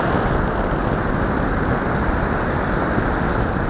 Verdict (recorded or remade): recorded